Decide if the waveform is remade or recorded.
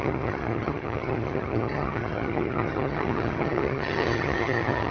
remade